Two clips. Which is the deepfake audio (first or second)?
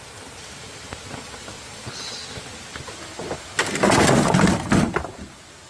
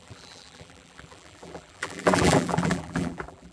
second